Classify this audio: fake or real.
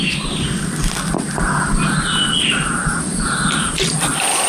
real